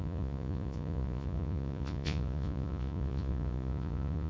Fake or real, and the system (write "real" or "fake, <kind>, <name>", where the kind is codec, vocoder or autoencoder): fake, vocoder, Vocos